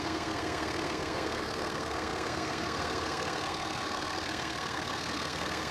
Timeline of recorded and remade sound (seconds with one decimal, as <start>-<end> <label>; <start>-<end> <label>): 0.0-5.7 remade